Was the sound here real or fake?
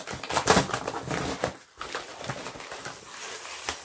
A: real